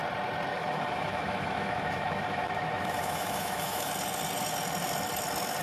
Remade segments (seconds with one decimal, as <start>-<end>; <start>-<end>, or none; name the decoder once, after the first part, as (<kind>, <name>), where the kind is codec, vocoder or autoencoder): 0.5-3.9 (autoencoder, DAC-VAE)